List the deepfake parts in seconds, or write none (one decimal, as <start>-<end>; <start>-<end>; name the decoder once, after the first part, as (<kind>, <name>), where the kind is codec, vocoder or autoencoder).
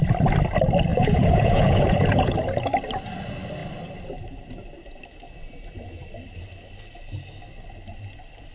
0.9-2.3 (vocoder, Vocos)